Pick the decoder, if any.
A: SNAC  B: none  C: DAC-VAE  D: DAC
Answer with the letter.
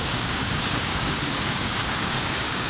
D